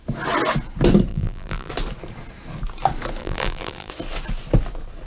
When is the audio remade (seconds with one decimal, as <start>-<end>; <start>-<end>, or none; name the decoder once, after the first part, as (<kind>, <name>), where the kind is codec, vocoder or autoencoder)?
1.1-1.7 (vocoder, BigVGAN v2); 3.2-3.9